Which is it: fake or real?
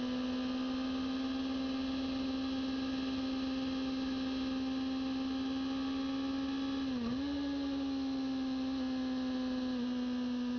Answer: real